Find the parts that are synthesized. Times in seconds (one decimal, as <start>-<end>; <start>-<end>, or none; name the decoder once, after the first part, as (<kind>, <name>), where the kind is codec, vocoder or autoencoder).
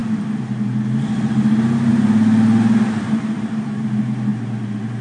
none